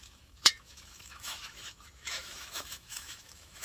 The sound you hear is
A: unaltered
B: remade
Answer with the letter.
B